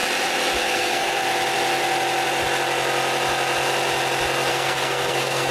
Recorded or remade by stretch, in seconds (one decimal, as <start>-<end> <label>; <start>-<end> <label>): 0.0-0.6 recorded; 0.6-1.2 remade; 1.2-4.5 recorded; 4.5-5.5 remade